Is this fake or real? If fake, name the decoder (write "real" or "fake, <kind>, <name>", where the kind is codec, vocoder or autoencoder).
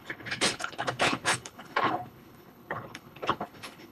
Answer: fake, codec, HILCodec